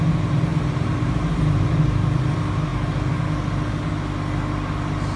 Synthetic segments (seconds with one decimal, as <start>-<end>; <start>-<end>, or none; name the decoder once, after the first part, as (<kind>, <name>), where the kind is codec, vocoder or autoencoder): 0.5-1.8 (vocoder, BigVGAN v2)

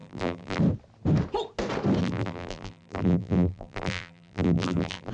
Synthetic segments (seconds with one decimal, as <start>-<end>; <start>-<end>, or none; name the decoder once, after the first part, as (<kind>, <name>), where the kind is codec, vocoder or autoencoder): 0.0-0.6 (vocoder, BigVGAN v2); 2.0-5.1

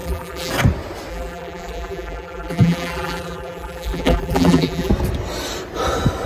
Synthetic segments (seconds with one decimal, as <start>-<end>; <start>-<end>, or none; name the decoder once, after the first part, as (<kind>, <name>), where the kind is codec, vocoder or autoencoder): 0.0-0.5 (vocoder, BigVGAN v2); 1.1-4.9